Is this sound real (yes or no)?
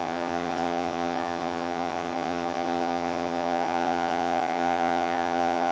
no